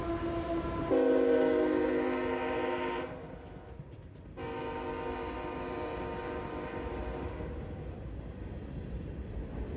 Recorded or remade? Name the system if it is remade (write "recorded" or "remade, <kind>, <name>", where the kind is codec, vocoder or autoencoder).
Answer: recorded